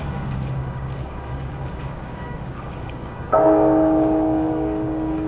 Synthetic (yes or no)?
yes